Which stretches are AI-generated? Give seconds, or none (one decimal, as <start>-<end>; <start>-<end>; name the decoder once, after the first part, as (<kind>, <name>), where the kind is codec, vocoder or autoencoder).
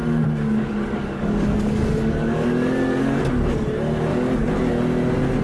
0.0-3.2 (codec, DAC); 4.1-4.7